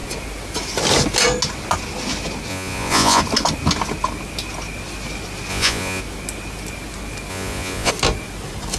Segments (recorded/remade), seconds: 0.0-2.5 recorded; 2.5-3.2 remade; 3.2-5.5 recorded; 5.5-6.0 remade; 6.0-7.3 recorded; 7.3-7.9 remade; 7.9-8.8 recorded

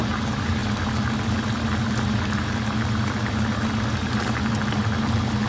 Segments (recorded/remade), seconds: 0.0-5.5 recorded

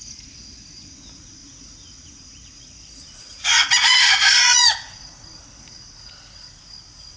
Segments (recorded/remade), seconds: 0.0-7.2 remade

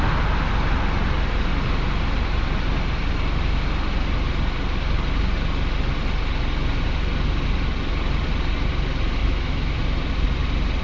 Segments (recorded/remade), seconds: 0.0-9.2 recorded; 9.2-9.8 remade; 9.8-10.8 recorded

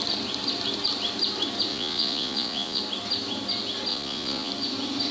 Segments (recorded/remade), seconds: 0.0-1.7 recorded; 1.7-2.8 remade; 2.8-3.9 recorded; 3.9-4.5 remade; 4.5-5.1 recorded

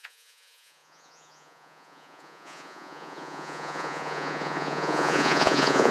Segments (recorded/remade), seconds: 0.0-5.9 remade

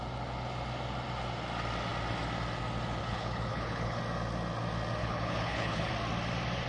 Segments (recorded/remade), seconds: 0.0-3.0 recorded; 3.0-4.0 remade; 4.0-5.0 recorded; 5.0-5.9 remade; 5.9-6.7 recorded

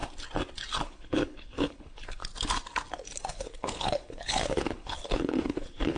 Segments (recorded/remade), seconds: 0.0-0.8 recorded; 0.8-2.2 remade; 2.2-3.3 recorded; 3.3-6.0 remade